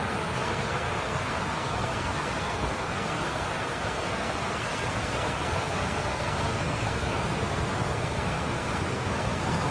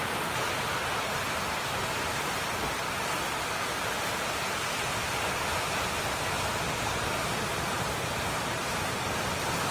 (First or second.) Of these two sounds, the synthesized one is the first